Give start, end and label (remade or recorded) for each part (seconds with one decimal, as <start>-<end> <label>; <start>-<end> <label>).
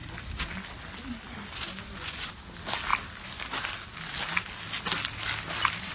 0.0-1.8 recorded; 1.8-2.3 remade; 2.3-5.9 recorded